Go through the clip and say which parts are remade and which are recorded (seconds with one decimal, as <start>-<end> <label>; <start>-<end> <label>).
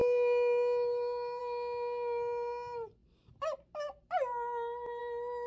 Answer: 0.0-5.5 recorded